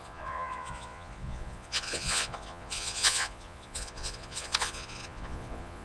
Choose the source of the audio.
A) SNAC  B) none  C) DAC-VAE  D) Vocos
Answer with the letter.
D